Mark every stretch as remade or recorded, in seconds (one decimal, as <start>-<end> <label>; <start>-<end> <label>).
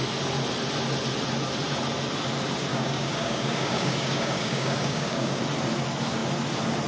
0.0-2.7 recorded; 2.7-5.4 remade; 5.4-6.9 recorded